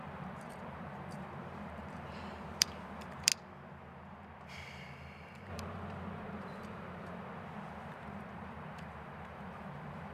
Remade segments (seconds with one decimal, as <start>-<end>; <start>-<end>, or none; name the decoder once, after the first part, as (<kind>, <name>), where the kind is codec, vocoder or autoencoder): 0.0-3.3 (vocoder, BigVGAN v2); 5.5-10.1